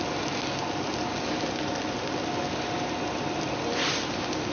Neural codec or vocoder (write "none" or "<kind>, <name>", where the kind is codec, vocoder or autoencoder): none